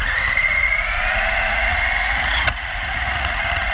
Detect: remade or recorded remade